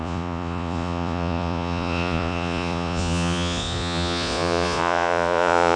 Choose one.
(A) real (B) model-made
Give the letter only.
B